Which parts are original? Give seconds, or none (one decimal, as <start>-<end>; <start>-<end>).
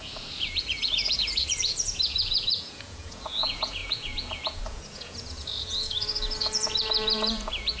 none